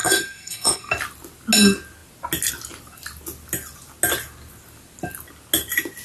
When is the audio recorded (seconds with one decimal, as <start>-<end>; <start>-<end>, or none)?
0.9-6.0